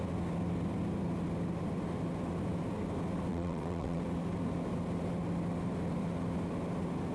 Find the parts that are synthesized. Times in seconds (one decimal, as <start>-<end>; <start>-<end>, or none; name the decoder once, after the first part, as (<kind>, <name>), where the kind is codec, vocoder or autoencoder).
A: 3.3-4.0 (vocoder, WaveNeXt)